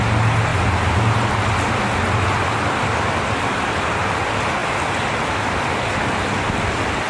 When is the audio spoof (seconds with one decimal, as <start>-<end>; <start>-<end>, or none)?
none